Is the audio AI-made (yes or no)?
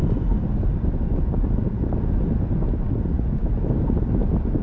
no